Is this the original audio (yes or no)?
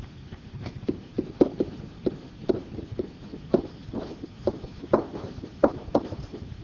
yes